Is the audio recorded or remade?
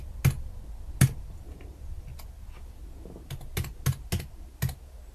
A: recorded